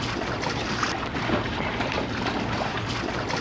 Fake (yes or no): no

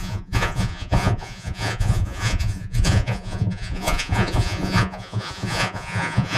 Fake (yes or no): yes